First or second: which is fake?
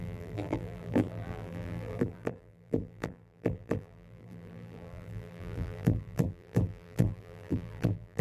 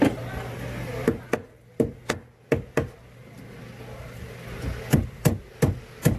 first